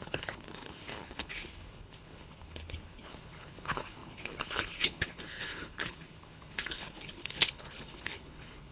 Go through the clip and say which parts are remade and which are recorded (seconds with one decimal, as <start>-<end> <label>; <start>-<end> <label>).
0.0-8.7 remade